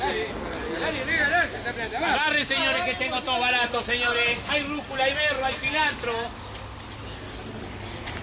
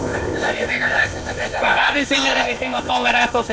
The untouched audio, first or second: first